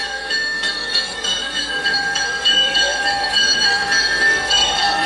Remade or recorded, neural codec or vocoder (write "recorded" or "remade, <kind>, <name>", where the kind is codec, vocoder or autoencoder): remade, codec, SNAC